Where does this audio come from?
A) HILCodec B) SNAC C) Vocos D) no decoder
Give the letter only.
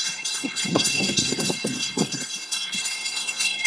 B